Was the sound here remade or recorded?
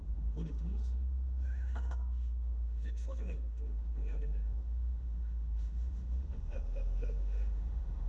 remade